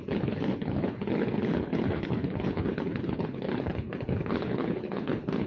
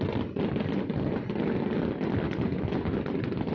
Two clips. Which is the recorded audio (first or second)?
second